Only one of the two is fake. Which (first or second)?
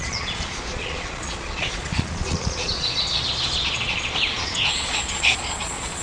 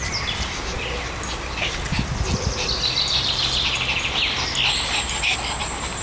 first